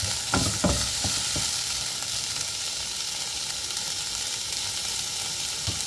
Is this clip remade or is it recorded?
recorded